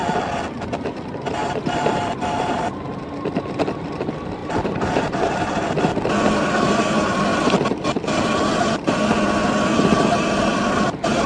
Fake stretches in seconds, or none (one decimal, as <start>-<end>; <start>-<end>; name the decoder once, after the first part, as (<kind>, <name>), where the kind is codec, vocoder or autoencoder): 1.4-2.6 (vocoder, BigVGAN v2); 4.4-5.7